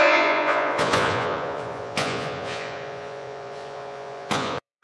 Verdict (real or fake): fake